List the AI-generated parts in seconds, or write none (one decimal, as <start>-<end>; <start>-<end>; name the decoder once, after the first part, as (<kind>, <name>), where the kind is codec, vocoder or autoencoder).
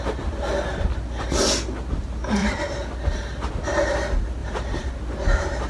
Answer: 2.4-3.5 (vocoder, BigVGAN v2); 4.4-4.9